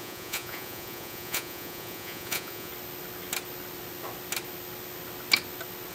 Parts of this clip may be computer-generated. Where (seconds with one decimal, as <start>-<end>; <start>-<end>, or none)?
0.0-2.7